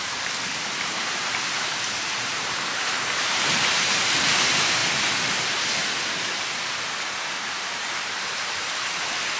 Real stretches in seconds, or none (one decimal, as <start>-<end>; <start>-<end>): 4.8-7.1